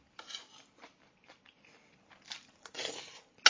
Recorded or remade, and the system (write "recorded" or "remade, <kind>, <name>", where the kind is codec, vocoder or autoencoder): recorded